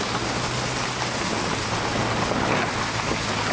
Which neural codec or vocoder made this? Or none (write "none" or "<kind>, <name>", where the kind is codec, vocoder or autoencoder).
none